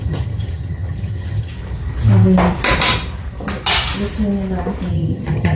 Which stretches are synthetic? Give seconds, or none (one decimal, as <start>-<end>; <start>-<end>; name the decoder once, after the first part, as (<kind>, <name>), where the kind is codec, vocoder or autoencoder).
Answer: 0.0-1.5 (vocoder, HiFi-GAN); 4.9-5.6